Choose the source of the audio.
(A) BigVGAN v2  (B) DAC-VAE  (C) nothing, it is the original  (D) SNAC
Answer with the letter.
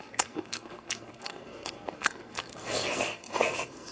D